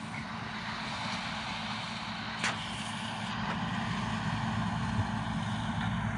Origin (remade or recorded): recorded